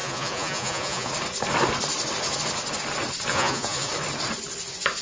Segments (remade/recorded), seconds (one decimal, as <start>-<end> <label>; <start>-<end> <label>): 0.0-1.1 remade; 1.1-3.3 recorded; 3.3-3.9 remade; 3.9-5.0 recorded